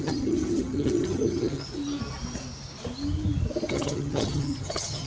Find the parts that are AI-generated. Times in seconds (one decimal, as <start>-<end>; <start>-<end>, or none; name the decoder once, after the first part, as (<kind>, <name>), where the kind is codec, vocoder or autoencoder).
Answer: 0.0-1.7 (vocoder, HiFi-GAN); 3.7-5.1